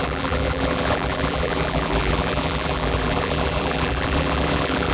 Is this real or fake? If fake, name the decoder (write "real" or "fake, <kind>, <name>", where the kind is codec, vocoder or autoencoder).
fake, vocoder, BigVGAN v2